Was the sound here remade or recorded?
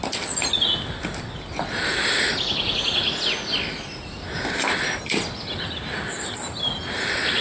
recorded